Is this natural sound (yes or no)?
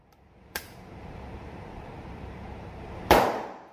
no